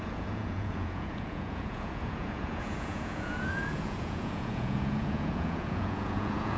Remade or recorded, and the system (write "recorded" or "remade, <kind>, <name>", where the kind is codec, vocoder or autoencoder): remade, vocoder, Vocos